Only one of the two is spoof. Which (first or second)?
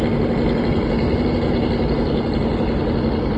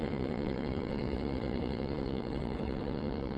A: second